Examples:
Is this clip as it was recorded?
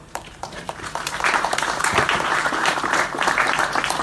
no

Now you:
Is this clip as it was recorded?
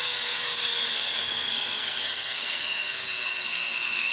no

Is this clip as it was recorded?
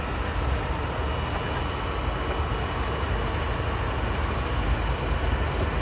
yes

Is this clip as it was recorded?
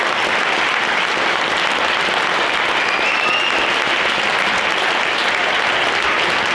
yes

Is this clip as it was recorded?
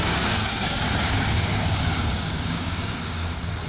no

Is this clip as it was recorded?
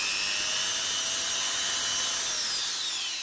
yes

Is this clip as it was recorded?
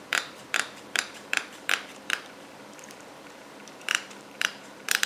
no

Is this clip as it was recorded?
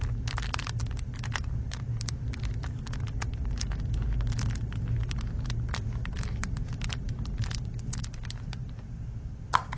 yes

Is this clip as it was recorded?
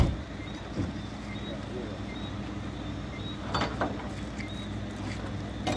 yes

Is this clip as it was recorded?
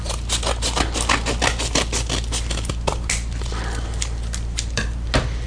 yes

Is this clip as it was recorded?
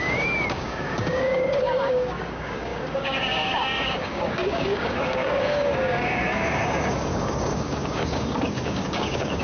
no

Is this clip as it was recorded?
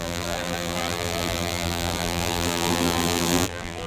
no